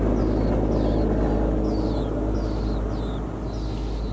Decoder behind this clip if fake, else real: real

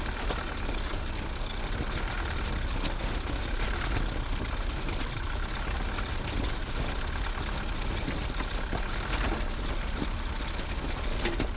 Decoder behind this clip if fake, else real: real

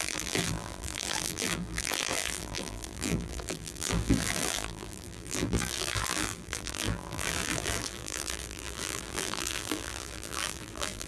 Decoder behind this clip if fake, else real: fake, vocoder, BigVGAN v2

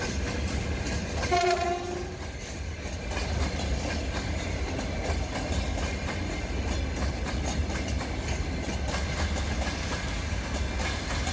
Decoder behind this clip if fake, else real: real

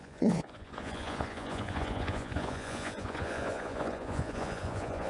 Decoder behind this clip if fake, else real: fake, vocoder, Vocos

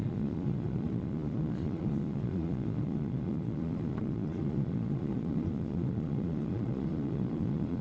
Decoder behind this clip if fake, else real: fake, vocoder, Vocos